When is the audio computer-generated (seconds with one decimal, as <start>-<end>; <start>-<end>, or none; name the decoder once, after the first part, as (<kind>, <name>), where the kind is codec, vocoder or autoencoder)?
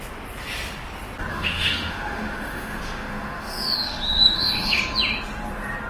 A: 1.3-4.8 (autoencoder, DAC-VAE)